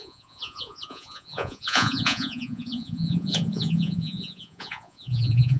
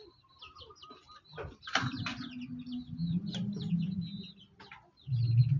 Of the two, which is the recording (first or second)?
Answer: second